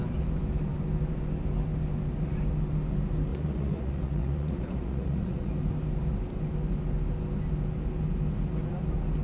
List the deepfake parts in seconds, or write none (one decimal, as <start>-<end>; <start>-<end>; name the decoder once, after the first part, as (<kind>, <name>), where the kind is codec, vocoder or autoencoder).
3.3-5.5 (vocoder, Vocos)